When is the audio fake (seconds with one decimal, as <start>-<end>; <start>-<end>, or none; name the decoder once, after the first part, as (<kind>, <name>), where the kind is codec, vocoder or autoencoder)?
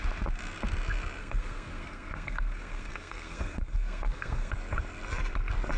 1.2-4.5 (codec, SNAC)